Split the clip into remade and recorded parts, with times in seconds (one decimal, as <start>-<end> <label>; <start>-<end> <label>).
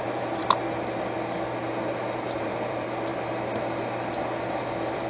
0.0-0.4 remade; 0.4-2.4 recorded; 2.4-3.1 remade; 3.1-4.6 recorded; 4.6-5.1 remade